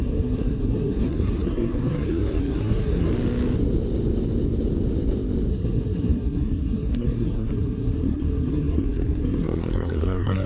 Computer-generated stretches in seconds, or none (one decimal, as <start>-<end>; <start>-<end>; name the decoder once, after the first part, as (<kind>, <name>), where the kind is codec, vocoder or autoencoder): 0.0-3.1 (codec, SNAC); 5.5-10.5